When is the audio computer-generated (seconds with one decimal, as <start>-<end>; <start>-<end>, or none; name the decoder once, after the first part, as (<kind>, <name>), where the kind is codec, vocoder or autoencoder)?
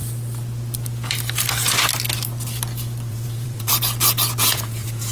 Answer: 3.1-3.7 (vocoder, Vocos); 4.4-5.1